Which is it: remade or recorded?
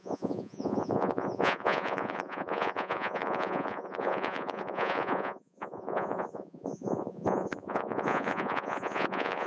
remade